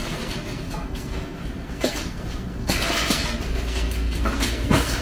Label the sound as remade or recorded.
remade